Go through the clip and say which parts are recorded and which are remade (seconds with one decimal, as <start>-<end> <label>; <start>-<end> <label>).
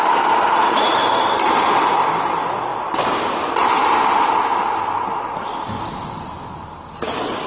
0.0-7.5 recorded